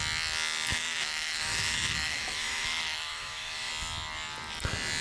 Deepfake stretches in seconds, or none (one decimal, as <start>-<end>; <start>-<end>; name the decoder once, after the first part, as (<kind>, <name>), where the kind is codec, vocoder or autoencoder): 0.7-3.7 (autoencoder, DAC-VAE)